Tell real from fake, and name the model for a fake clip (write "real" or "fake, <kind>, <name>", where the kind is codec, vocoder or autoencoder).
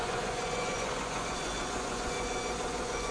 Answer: fake, vocoder, Vocos